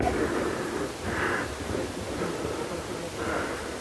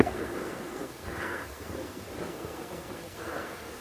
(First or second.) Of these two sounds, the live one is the first